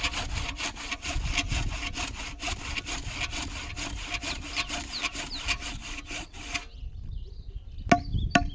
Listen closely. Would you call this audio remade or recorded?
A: recorded